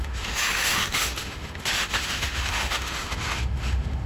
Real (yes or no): no